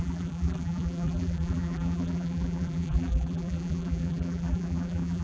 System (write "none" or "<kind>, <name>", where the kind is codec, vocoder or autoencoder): vocoder, BigVGAN v2